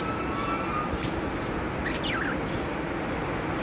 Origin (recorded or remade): recorded